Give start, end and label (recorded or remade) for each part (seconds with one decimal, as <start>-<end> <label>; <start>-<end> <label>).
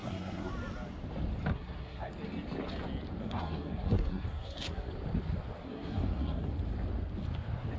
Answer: 0.0-0.5 remade; 0.5-1.5 recorded; 1.5-2.1 remade; 2.1-3.2 recorded; 3.2-4.9 remade; 4.9-5.6 recorded; 5.6-6.5 remade; 6.5-7.8 recorded